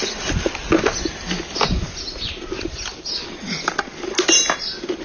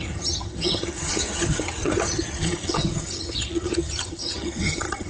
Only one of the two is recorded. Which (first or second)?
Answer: first